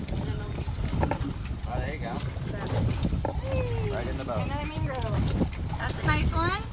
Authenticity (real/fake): real